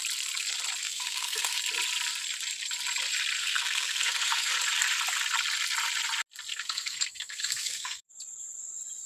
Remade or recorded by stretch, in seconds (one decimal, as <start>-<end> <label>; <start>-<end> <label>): 0.0-0.8 recorded; 0.8-1.6 remade; 1.6-3.4 recorded; 3.4-4.5 remade; 4.5-6.5 recorded; 6.5-8.1 remade; 8.1-9.1 recorded